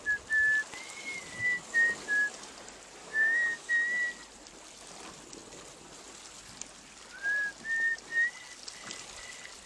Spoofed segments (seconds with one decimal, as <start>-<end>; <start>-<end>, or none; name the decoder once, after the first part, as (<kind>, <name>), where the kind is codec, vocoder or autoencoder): 3.0-3.7 (codec, DAC)